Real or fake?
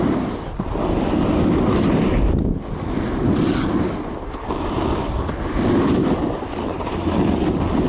real